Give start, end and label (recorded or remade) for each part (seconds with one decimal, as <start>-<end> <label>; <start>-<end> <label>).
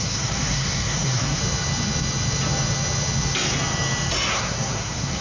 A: 0.0-1.4 remade; 1.4-4.3 recorded; 4.3-5.2 remade